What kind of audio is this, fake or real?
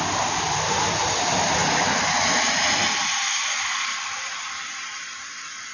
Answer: real